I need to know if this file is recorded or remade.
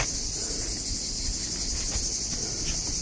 recorded